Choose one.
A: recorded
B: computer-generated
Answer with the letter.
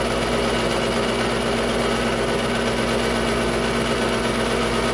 A